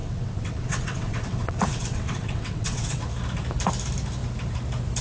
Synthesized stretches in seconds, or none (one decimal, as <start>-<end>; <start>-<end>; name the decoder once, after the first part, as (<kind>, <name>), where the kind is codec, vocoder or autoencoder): 0.0-3.0 (vocoder, WaveNeXt)